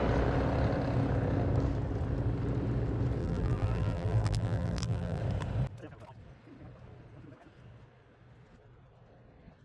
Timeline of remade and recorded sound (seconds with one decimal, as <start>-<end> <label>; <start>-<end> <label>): 0.0-3.2 recorded; 3.2-5.2 remade; 5.2-9.6 recorded